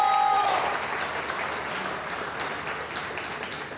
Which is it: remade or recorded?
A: recorded